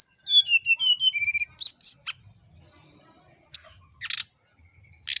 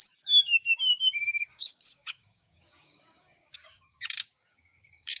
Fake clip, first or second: second